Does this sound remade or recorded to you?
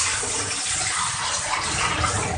recorded